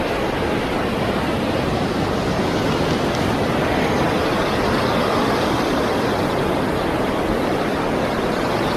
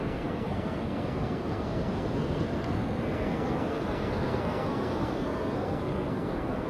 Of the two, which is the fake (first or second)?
second